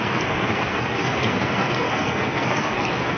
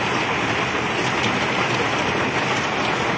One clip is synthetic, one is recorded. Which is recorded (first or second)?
second